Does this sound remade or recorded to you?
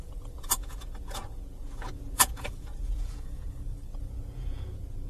remade